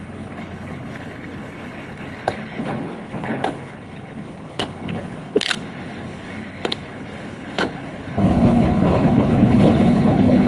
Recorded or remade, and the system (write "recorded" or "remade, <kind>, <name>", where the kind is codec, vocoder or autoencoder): remade, codec, HILCodec